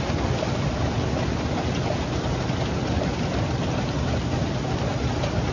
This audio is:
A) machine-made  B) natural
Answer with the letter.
B